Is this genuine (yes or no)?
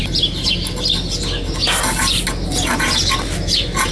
yes